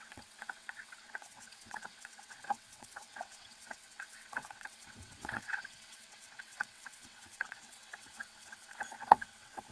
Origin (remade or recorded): remade